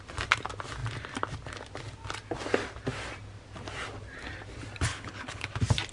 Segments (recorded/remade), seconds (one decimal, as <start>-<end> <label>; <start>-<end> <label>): 0.0-4.9 recorded; 4.9-5.5 remade; 5.5-5.9 recorded